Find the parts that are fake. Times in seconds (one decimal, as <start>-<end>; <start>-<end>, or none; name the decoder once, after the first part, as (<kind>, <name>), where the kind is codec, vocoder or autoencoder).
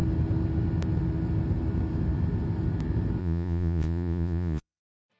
3.2-4.8 (vocoder, Vocos)